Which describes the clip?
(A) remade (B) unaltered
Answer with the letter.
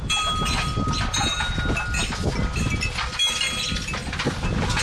B